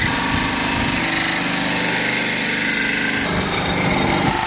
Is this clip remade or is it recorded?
recorded